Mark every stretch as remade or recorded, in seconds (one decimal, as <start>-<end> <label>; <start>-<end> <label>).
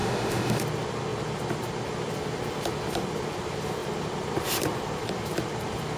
0.0-0.6 remade; 0.6-6.0 recorded